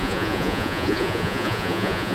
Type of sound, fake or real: fake